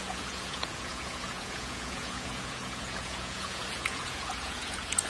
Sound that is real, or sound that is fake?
fake